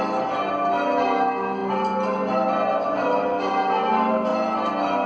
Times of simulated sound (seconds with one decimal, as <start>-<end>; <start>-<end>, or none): none